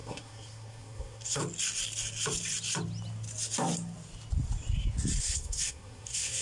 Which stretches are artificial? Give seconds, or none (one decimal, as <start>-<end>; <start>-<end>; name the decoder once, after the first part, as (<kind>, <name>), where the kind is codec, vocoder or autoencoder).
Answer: 0.0-1.4 (codec, SNAC); 5.2-6.4